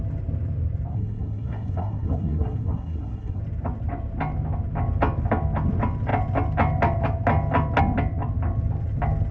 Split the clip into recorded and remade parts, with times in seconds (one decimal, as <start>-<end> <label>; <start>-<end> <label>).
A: 0.0-0.9 recorded; 0.9-3.4 remade; 3.4-9.3 recorded